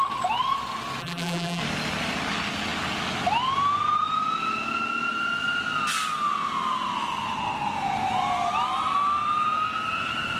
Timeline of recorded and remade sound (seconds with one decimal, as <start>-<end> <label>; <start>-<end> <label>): 0.0-1.0 recorded; 1.0-1.6 remade; 1.6-10.4 recorded